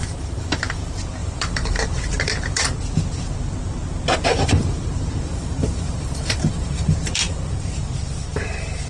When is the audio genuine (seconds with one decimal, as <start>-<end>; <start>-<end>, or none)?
0.6-1.2; 2.6-4.3; 7.8-8.9